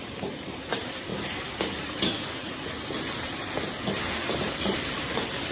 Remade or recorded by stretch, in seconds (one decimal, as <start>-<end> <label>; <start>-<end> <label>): 0.0-1.1 remade; 1.1-4.3 recorded; 4.3-5.5 remade